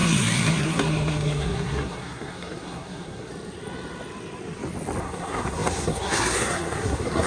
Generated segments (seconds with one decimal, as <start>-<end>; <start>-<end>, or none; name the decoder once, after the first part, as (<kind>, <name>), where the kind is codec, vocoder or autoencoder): 0.0-3.3 (codec, SNAC); 5.0-7.3